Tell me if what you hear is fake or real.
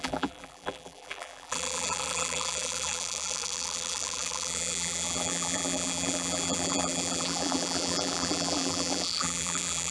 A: fake